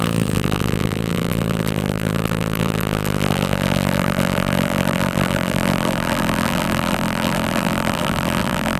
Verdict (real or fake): fake